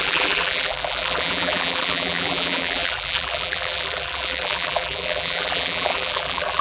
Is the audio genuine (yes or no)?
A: no